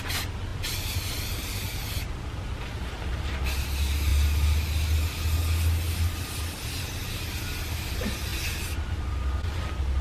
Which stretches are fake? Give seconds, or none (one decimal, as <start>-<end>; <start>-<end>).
none